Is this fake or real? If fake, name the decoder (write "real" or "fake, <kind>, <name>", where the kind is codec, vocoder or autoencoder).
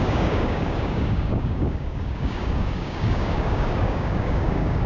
fake, codec, DAC